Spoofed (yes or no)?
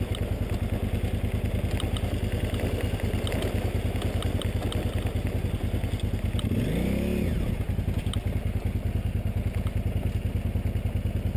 no